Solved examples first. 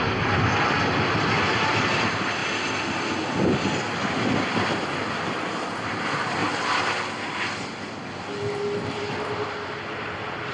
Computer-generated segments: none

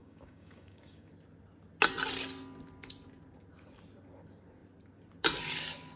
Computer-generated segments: 0.0-1.1

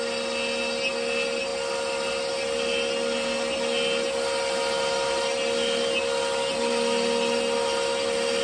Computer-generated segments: none